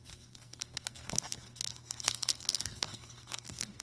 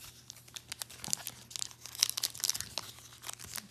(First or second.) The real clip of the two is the second